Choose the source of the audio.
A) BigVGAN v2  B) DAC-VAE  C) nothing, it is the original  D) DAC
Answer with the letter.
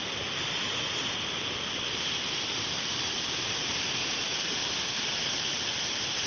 A